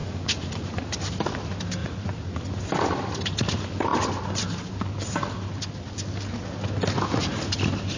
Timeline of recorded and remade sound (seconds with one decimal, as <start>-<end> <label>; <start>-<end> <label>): 0.0-0.8 remade; 0.8-1.8 recorded; 1.8-2.6 remade; 2.6-8.0 recorded